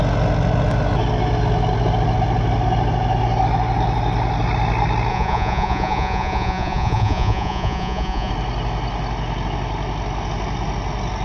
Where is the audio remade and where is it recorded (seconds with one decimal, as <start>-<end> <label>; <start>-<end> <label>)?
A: 0.0-5.1 recorded; 5.1-8.3 remade; 8.3-11.2 recorded